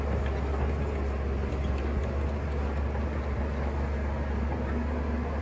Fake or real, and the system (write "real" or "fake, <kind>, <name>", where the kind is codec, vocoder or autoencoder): real